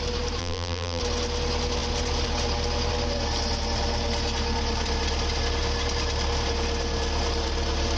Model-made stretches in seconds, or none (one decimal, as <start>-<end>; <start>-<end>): 0.4-1.0